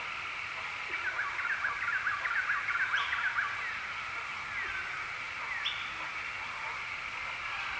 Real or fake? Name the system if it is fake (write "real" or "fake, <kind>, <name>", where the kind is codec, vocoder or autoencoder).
real